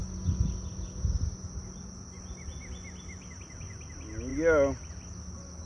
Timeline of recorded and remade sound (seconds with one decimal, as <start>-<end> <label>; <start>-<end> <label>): 0.0-5.7 recorded